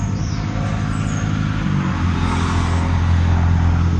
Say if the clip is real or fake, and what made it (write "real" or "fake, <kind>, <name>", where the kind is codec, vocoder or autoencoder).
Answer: real